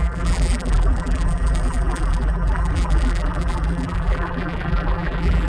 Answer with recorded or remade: remade